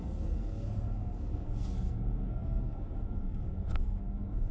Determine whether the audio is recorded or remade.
remade